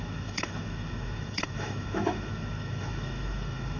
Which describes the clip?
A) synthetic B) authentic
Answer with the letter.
A